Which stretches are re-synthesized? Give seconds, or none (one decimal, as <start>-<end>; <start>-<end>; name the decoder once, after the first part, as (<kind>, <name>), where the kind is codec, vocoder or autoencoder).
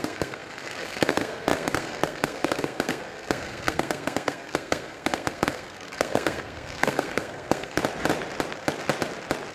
0.0-7.8 (codec, SNAC)